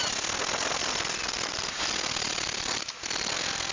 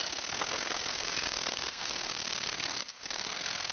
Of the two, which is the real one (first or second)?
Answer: first